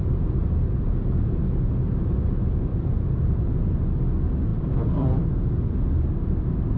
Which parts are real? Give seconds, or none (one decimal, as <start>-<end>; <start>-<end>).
0.0-0.4; 0.9-2.7; 3.5-4.5; 5.3-6.8

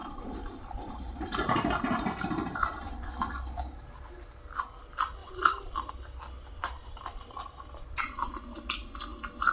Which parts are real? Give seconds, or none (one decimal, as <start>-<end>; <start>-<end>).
3.3-5.2; 5.9-6.4; 8.3-9.5